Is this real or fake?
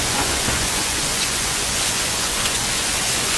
fake